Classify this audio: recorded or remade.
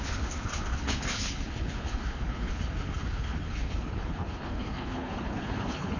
remade